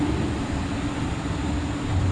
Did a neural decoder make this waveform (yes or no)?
no